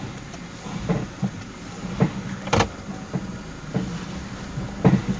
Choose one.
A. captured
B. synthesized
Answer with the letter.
A